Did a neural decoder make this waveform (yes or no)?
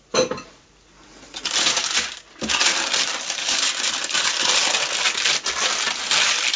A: no